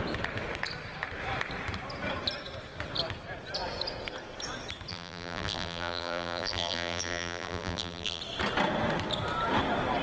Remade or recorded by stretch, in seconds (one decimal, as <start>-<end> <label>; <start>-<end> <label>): 0.0-4.9 recorded; 4.9-8.2 remade; 8.2-10.0 recorded